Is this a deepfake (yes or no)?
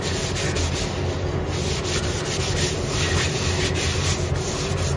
no